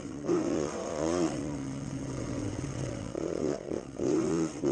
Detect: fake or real fake